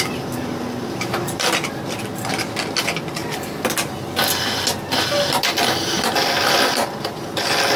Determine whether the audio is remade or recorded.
remade